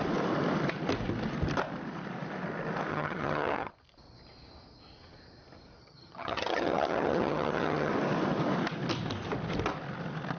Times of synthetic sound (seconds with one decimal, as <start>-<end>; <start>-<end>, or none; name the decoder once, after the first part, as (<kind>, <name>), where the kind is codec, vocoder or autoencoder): 2.9-3.7 (vocoder, HiFi-GAN); 5.8-7.9